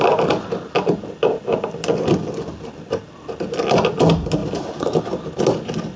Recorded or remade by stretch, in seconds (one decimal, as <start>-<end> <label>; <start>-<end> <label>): 0.0-6.0 recorded